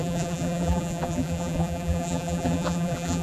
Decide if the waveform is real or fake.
fake